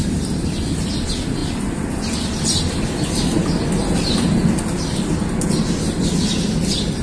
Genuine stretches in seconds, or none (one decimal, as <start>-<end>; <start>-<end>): 0.0-7.0